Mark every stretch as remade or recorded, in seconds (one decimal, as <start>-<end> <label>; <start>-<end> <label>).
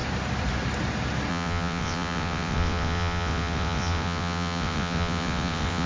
0.0-1.3 recorded; 1.3-5.9 remade